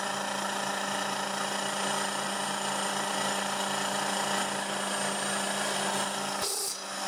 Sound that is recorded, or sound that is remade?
recorded